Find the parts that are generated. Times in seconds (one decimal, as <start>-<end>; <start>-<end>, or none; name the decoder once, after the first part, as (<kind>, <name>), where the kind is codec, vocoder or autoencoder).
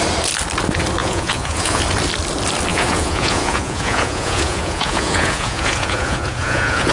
1.0-1.8 (vocoder, Vocos); 2.7-6.9